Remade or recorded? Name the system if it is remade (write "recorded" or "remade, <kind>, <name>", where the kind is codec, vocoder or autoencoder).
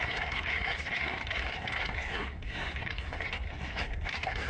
remade, codec, SNAC